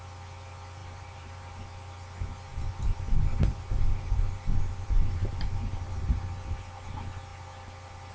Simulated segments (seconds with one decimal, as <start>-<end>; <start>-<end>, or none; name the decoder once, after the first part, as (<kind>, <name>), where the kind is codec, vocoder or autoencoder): 0.8-1.3 (vocoder, BigVGAN v2); 2.5-5.7